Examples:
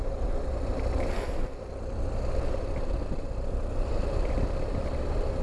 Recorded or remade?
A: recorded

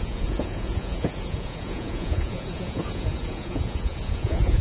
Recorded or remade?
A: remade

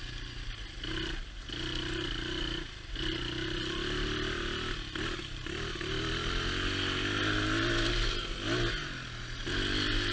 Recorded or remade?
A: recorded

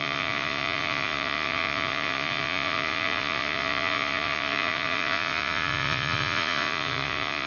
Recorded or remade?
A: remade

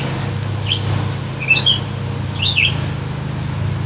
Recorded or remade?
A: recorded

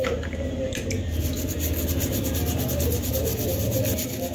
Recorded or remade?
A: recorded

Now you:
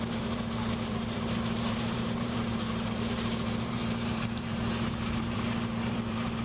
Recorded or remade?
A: remade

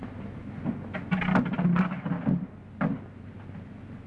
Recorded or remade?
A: recorded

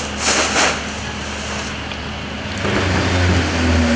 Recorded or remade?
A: recorded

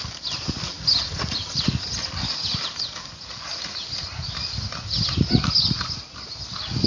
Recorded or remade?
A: recorded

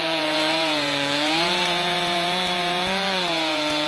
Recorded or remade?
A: remade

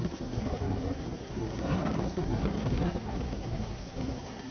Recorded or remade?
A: remade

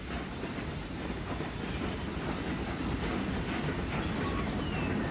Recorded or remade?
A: recorded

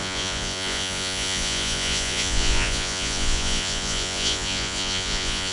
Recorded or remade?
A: remade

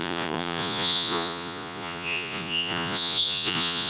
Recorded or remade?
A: remade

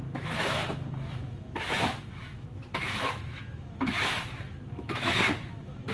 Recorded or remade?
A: remade